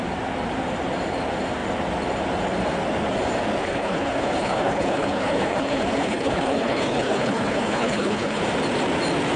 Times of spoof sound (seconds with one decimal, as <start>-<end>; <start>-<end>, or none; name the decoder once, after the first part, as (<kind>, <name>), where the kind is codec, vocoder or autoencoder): 3.6-8.4 (codec, HILCodec)